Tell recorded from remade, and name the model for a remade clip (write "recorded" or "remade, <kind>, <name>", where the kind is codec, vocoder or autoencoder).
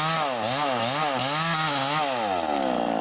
recorded